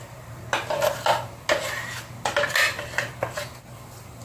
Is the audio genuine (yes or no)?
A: yes